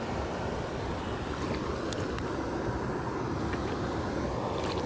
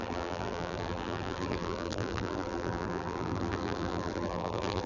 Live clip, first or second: first